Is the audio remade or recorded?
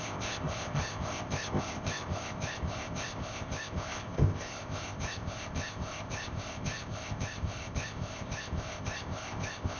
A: remade